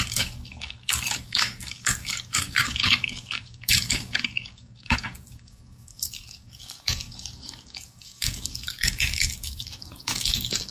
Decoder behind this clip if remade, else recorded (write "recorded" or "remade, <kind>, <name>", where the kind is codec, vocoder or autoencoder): remade, codec, DAC